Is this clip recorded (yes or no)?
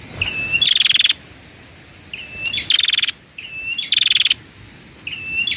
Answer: yes